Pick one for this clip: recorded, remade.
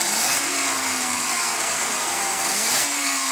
remade